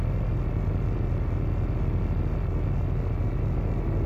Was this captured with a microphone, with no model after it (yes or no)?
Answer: yes